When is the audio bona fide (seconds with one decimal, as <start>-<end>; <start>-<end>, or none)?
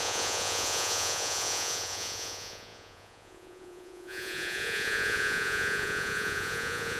none